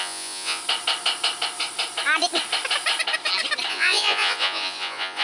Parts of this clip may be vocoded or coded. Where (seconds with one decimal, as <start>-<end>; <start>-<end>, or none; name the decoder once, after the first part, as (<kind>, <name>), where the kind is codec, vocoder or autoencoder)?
0.0-0.6 (vocoder, Vocos); 3.7-5.2